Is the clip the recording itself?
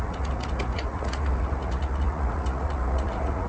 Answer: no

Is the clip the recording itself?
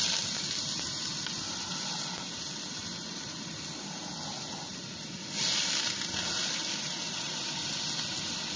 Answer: yes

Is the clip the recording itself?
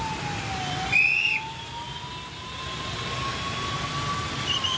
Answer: yes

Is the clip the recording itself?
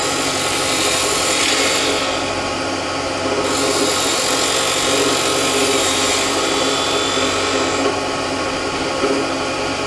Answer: yes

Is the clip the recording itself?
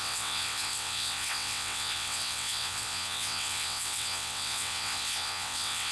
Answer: no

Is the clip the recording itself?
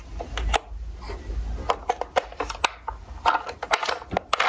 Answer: yes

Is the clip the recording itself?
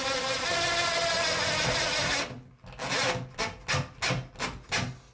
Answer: yes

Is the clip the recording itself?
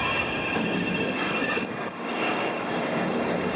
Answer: no